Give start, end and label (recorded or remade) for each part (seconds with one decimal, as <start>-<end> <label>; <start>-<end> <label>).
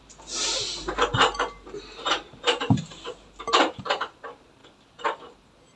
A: 0.0-4.6 remade; 4.6-5.8 recorded